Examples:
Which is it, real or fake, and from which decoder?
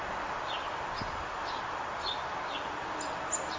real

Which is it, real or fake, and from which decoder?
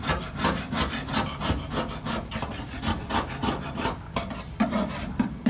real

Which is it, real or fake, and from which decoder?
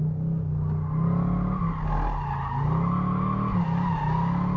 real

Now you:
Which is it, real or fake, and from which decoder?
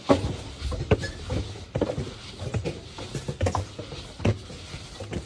real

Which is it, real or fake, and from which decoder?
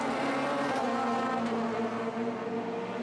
real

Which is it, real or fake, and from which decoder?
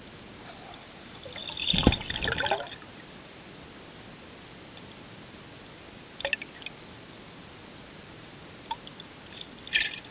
real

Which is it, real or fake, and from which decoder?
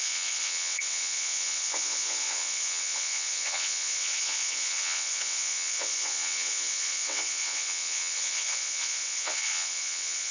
fake, vocoder, WaveNeXt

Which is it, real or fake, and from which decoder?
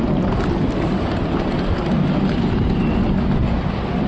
real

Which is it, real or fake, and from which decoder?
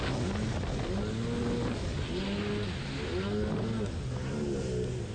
real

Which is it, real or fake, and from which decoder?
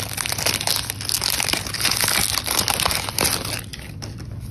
real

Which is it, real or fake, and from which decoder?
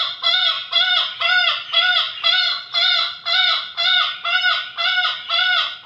real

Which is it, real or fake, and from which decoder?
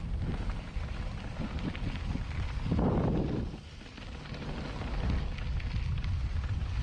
real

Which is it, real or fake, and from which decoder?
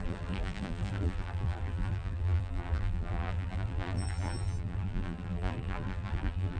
fake, vocoder, BigVGAN v2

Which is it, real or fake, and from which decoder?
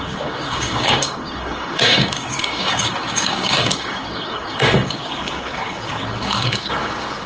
fake, codec, DAC